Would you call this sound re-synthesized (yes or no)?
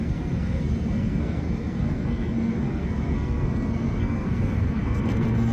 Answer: yes